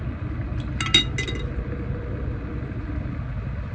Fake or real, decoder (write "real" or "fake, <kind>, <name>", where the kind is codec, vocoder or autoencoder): real